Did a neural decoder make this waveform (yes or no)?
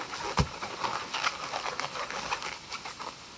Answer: no